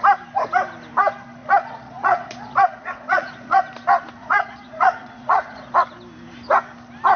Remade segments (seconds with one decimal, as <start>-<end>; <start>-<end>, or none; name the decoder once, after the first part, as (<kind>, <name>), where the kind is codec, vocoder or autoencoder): 1.4-3.6 (vocoder, Vocos); 4.2-5.7